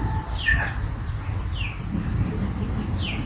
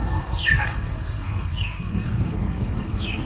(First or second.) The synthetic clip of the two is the second